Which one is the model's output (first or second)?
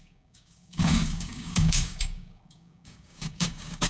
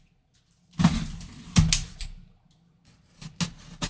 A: first